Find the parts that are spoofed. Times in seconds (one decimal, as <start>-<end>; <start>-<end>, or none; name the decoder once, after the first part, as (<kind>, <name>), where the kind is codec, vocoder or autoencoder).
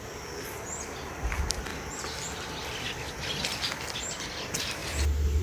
none